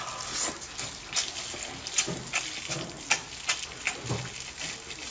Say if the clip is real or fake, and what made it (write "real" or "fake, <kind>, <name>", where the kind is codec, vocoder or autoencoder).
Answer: real